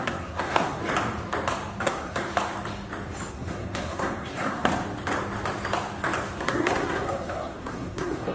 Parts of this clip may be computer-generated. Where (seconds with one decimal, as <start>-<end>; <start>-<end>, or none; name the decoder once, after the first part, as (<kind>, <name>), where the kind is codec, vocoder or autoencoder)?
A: 0.0-0.8 (codec, SNAC); 1.8-2.2; 3.3-4.7; 6.4-8.3